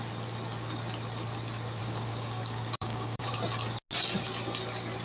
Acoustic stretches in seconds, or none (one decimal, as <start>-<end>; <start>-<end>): 0.0-1.8; 3.3-5.0